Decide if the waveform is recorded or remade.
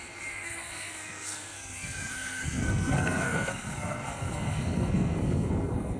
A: remade